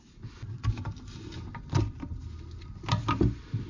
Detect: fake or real real